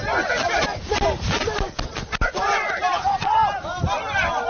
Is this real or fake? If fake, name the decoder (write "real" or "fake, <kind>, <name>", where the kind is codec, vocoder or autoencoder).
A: real